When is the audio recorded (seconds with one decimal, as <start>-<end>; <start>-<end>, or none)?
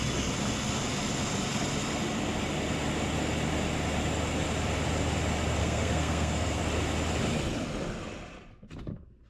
0.0-5.6; 6.6-9.3